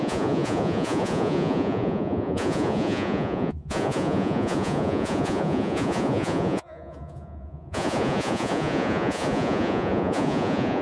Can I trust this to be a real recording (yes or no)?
no